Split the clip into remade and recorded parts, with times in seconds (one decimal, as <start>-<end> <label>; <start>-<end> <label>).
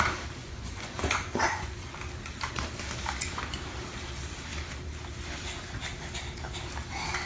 0.0-0.4 recorded; 0.4-1.9 remade; 1.9-7.3 recorded